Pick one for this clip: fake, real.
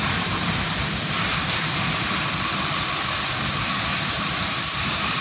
real